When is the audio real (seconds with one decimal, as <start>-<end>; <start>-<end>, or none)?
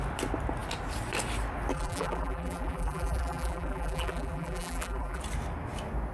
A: 0.0-1.7; 5.2-6.1